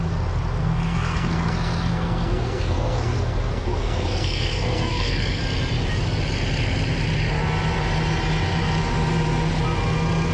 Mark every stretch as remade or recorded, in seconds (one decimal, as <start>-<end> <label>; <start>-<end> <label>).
0.0-0.6 recorded; 0.6-5.4 remade; 5.4-10.3 recorded